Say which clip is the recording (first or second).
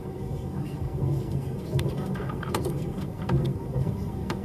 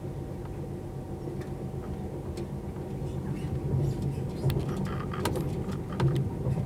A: second